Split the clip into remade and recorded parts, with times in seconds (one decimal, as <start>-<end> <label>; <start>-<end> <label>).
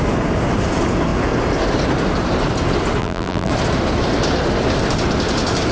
0.0-3.0 recorded; 3.0-3.5 remade; 3.5-5.7 recorded